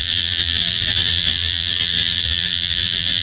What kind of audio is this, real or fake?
fake